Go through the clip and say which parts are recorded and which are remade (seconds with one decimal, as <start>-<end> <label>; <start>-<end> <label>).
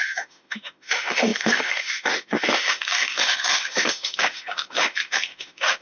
0.0-5.8 remade